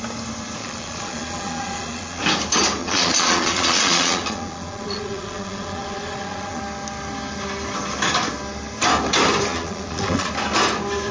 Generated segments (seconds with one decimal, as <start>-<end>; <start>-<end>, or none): 0.6-2.2; 2.8-6.6; 9.5-10.3